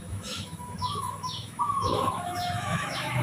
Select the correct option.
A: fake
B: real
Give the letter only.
A